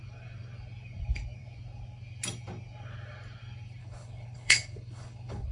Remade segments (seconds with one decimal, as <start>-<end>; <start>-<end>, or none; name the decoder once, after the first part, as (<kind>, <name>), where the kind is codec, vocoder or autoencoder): 3.8-5.5 (codec, HILCodec)